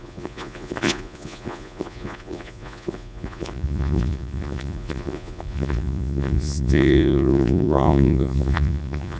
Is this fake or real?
fake